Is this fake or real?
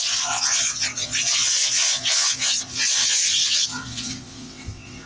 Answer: fake